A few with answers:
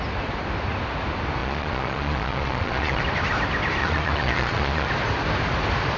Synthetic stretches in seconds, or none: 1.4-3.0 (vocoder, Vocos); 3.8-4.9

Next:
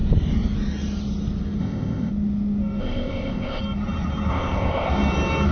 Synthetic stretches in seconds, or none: 1.6-2.1 (codec, ZipCodec); 2.8-3.6; 4.3-4.9

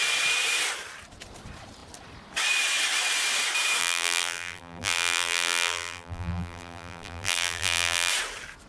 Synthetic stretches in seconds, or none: 3.8-8.1 (vocoder, BigVGAN v2)

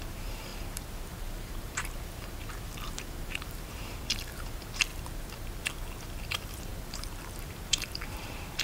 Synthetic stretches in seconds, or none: 0.0-4.9 (vocoder, BigVGAN v2); 6.3-8.6